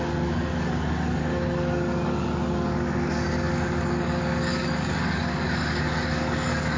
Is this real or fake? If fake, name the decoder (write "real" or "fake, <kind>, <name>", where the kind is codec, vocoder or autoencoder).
fake, codec, DAC